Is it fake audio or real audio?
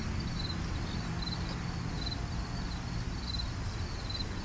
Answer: real